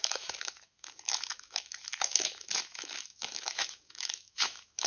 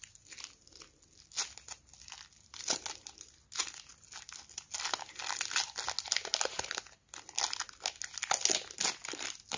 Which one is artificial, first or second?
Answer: first